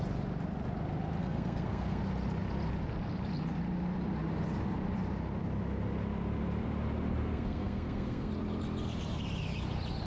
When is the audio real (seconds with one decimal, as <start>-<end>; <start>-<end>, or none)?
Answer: 0.0-1.2; 2.0-7.2; 8.3-10.1